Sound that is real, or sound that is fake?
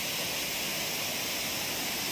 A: real